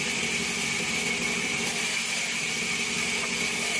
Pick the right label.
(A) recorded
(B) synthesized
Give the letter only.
A